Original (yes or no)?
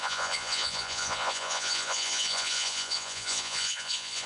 no